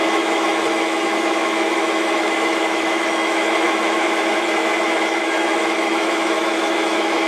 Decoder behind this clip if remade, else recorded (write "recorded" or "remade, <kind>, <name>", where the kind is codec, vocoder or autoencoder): remade, autoencoder, DAC-VAE